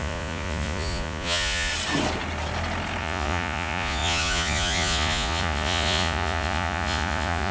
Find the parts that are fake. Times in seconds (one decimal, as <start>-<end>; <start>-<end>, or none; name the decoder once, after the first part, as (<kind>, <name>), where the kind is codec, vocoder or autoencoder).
0.0-1.7 (vocoder, Vocos); 3.0-7.5